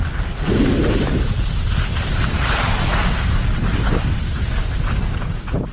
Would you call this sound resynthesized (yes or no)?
no